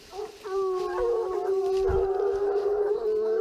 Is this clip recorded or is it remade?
recorded